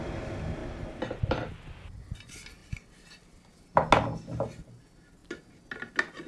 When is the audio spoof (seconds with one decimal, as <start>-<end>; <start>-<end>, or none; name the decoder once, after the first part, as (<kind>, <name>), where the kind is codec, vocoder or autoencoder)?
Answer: none